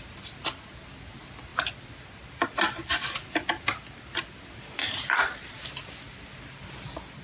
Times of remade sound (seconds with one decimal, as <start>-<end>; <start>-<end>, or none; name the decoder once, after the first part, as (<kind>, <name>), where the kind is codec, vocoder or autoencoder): 1.5-5.8 (vocoder, BigVGAN v2)